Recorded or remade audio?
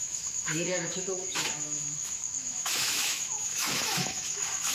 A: remade